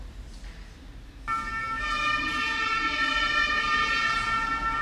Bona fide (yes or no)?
yes